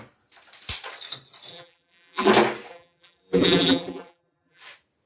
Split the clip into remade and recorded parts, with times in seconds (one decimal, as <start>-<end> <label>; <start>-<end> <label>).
0.0-1.5 recorded; 1.5-2.3 remade; 2.3-2.7 recorded; 2.7-4.6 remade; 4.6-5.1 recorded